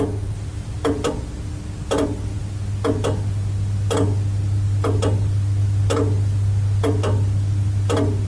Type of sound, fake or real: real